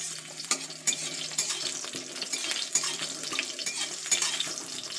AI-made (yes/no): yes